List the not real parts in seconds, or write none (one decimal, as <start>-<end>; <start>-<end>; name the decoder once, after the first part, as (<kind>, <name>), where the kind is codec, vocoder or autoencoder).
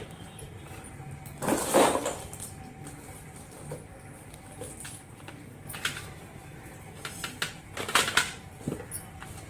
none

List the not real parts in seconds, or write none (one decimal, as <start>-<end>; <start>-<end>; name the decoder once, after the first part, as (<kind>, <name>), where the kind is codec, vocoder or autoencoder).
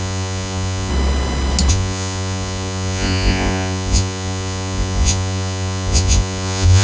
0.0-0.9 (vocoder, Vocos); 1.7-6.8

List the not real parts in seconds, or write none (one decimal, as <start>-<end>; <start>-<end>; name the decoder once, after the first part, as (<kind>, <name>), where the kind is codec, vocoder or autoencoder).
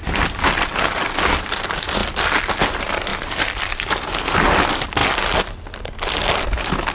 3.1-4.0 (vocoder, BigVGAN v2)